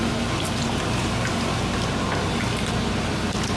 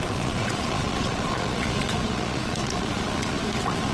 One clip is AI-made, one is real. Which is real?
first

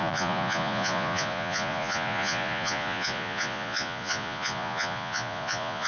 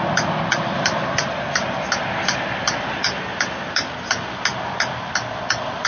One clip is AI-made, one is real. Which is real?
second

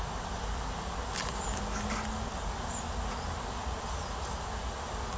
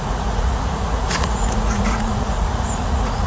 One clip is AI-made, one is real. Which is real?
first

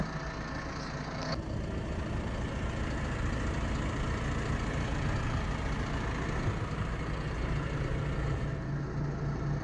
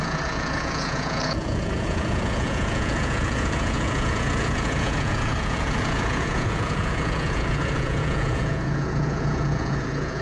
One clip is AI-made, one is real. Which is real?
first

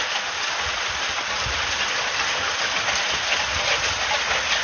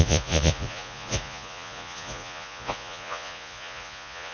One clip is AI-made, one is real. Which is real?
first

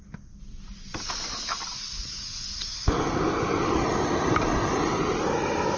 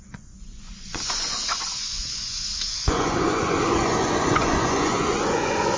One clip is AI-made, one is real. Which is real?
first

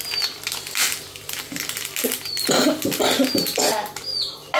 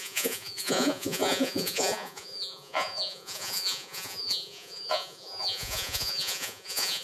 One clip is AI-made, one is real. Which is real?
first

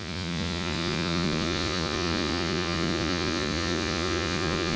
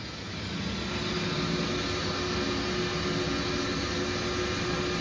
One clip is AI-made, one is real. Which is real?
second